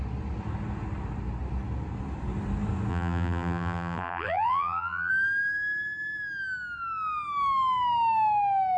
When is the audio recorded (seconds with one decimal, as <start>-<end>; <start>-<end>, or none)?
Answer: 0.0-2.9; 5.1-8.8